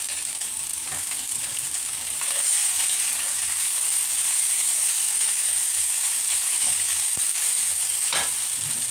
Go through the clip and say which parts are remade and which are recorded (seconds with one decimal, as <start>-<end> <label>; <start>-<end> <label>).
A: 0.0-8.2 remade; 8.2-8.9 recorded

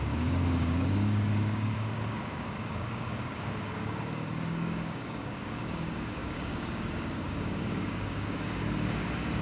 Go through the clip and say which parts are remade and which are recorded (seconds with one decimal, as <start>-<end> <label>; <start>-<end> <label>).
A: 0.0-9.4 remade

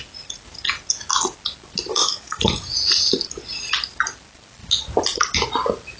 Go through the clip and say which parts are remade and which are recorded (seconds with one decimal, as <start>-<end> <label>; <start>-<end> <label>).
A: 0.0-1.9 recorded; 1.9-2.5 remade; 2.5-6.0 recorded

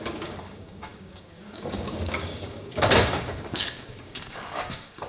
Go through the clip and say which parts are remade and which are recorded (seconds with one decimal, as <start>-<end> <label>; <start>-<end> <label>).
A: 0.0-5.1 remade

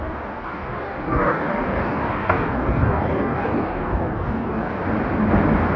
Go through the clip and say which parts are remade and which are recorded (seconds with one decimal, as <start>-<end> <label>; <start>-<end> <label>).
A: 0.0-4.8 remade; 4.8-5.8 recorded

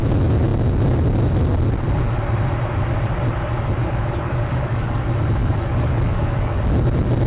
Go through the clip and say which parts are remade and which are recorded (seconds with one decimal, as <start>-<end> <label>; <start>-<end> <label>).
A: 0.0-3.8 recorded; 3.8-5.0 remade; 5.0-5.4 recorded; 5.4-6.6 remade; 6.6-7.3 recorded

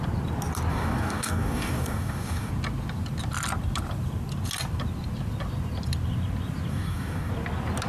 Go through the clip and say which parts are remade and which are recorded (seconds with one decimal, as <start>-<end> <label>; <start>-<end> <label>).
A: 0.0-0.7 recorded; 0.7-2.5 remade; 2.5-6.7 recorded; 6.7-7.3 remade; 7.3-7.9 recorded

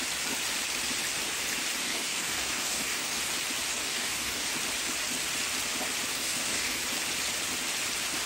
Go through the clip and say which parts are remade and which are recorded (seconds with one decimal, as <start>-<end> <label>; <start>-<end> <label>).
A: 0.0-1.8 recorded; 1.8-3.3 remade; 3.3-3.7 recorded; 3.7-4.5 remade; 4.5-6.1 recorded; 6.1-6.8 remade; 6.8-8.3 recorded